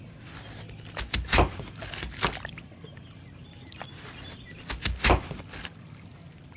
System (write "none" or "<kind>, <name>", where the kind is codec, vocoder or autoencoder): none